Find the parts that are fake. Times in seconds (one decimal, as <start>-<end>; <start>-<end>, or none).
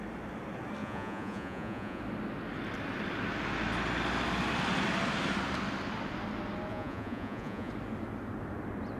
0.8-2.0; 6.7-7.7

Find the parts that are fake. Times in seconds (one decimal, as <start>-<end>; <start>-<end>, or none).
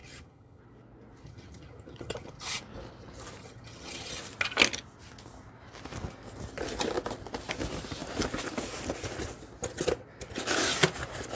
0.0-0.6; 1.2-2.6; 3.4-4.2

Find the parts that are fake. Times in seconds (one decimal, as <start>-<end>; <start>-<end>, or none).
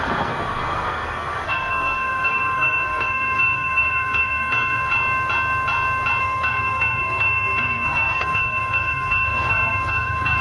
0.0-4.9; 6.2-10.4